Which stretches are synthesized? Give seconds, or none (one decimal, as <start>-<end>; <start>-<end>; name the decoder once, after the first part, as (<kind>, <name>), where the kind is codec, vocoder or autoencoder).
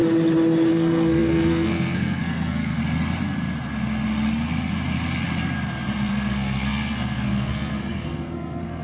0.7-2.8 (codec, SNAC); 6.1-8.8